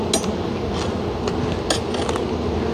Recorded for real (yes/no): yes